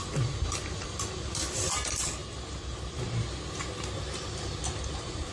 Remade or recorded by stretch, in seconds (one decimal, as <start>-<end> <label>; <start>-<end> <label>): 0.0-5.3 recorded